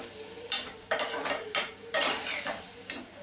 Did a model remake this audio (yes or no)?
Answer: yes